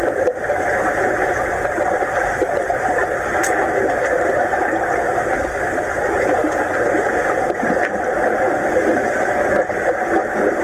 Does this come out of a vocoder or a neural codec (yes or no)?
no